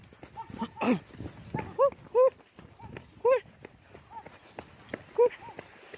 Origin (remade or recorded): recorded